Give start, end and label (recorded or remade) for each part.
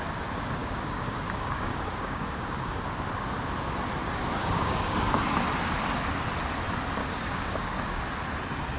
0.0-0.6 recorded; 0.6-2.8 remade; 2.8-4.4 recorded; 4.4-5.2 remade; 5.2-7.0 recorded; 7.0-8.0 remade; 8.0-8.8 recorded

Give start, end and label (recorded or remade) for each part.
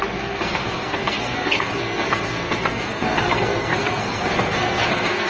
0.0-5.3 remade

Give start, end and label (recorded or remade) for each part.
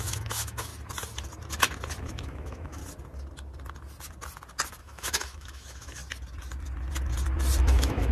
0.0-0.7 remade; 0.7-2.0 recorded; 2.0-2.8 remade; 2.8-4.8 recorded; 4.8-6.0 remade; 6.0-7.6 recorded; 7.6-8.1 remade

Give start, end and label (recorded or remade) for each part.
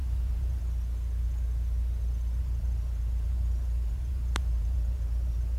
0.0-0.6 remade; 0.6-2.4 recorded; 2.4-5.6 remade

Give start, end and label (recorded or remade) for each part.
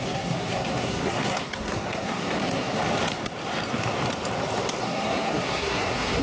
0.0-2.8 remade; 2.8-4.8 recorded; 4.8-6.2 remade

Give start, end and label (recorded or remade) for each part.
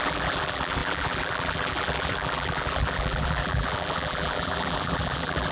0.0-5.5 remade